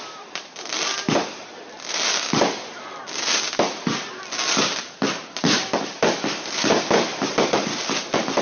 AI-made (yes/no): no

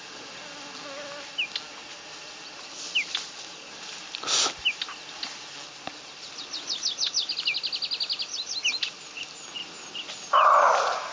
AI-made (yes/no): no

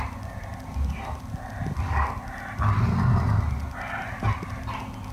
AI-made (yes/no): no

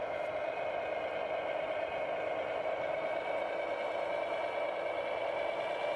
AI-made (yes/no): no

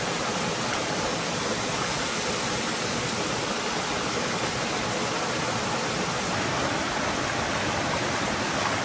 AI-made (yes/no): no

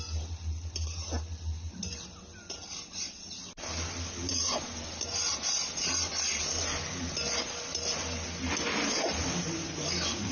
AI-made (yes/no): no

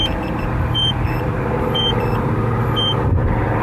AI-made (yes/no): yes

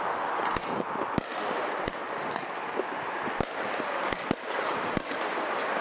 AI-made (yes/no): no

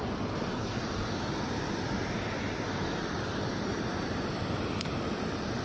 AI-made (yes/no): no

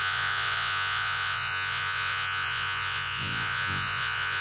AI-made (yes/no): yes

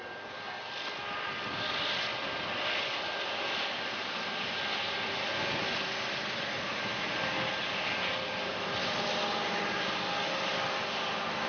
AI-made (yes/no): no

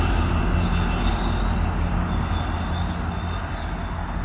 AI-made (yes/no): no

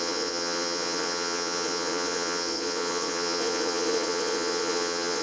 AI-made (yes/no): yes